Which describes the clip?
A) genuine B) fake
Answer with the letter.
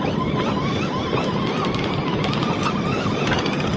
A